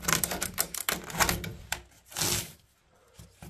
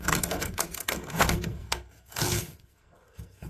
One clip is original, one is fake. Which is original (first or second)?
first